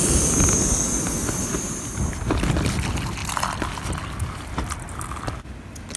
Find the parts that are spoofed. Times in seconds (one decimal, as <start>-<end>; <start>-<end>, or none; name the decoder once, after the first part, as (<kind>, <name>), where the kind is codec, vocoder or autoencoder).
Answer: none